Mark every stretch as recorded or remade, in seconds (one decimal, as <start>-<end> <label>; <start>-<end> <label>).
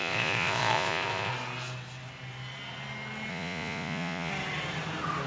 0.0-1.3 remade; 1.3-3.3 recorded; 3.3-4.3 remade; 4.3-5.3 recorded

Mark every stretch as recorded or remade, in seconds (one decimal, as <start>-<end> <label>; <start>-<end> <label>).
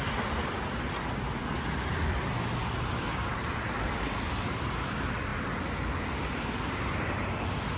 0.0-7.8 recorded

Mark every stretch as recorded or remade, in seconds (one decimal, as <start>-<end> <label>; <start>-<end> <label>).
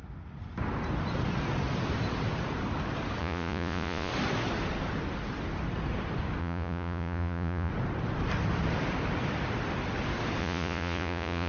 0.0-3.2 recorded; 3.2-4.1 remade; 4.1-6.4 recorded; 6.4-7.7 remade; 7.7-10.4 recorded; 10.4-11.5 remade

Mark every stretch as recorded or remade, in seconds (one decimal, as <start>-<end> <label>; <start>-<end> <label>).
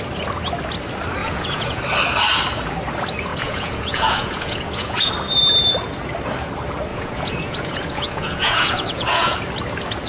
0.0-1.2 recorded; 1.2-1.8 remade; 1.8-3.3 recorded; 3.3-5.1 remade; 5.1-6.9 recorded; 6.9-9.4 remade; 9.4-10.1 recorded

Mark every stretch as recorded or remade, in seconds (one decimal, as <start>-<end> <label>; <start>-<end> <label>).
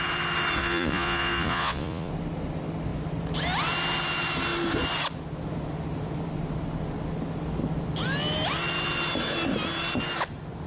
0.0-0.6 recorded; 0.6-2.1 remade; 2.1-10.7 recorded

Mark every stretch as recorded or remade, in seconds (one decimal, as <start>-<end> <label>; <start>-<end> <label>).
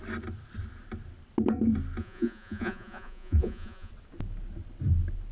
0.0-2.0 recorded; 2.0-3.9 remade; 3.9-5.3 recorded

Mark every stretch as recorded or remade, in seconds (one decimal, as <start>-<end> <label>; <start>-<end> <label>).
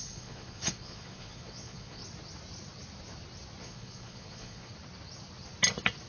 0.0-2.0 remade; 2.0-3.6 recorded; 3.6-4.7 remade; 4.7-6.1 recorded